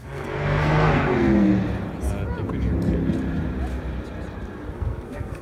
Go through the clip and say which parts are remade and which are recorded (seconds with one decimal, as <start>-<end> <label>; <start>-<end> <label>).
0.0-1.5 remade; 1.5-4.7 recorded; 4.7-5.4 remade